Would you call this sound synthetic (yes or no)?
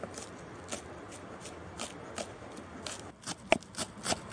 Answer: no